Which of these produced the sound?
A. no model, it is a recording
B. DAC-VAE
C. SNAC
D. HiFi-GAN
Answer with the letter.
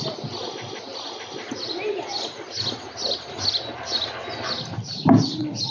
A